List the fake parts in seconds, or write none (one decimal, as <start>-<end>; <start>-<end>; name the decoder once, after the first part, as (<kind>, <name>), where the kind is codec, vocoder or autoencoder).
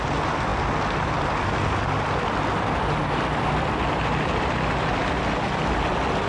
none